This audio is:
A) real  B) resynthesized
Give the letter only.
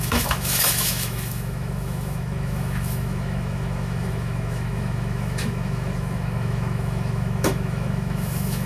B